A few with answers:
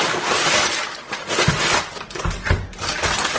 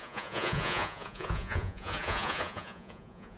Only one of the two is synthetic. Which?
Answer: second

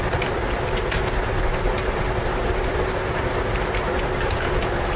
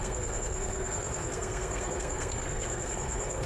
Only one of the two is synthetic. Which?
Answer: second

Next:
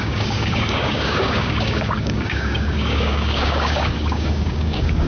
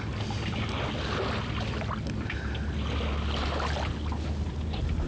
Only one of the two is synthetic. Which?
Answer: first